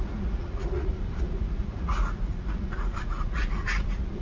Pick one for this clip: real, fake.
fake